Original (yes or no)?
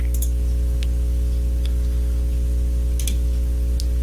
yes